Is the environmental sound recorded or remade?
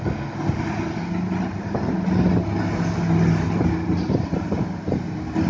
recorded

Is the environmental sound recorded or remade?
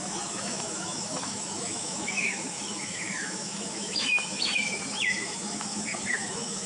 remade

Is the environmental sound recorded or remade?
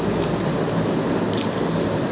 recorded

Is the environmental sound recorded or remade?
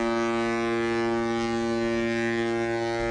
recorded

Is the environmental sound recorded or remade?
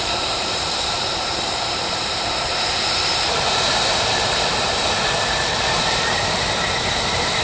remade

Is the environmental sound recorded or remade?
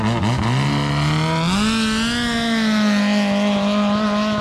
recorded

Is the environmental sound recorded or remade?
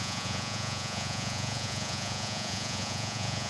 remade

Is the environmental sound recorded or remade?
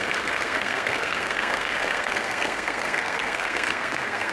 remade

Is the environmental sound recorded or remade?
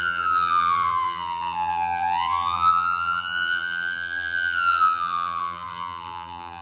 remade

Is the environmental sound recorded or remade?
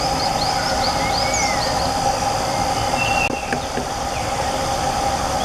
recorded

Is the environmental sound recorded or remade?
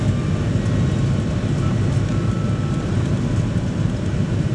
recorded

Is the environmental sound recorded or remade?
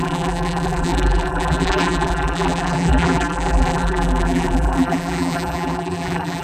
remade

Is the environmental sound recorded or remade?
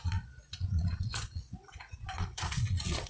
remade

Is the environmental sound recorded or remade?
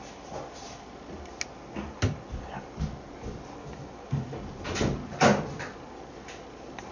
recorded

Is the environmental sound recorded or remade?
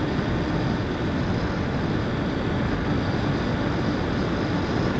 recorded